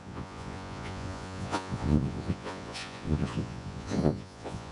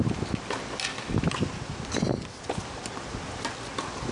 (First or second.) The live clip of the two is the second